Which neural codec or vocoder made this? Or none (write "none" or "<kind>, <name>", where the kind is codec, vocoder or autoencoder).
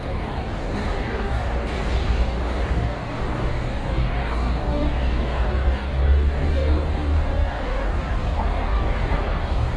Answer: codec, DAC